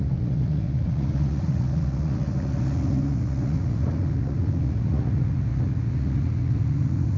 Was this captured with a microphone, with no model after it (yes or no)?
no